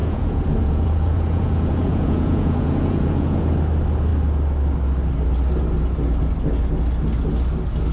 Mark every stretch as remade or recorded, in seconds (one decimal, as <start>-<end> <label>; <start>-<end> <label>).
0.0-3.5 remade; 3.5-7.9 recorded